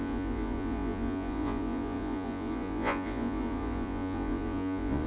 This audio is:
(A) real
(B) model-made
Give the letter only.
B